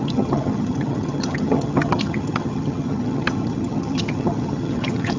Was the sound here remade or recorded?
remade